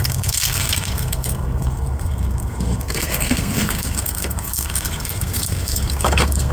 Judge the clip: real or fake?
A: fake